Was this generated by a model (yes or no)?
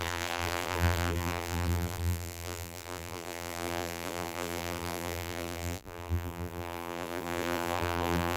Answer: yes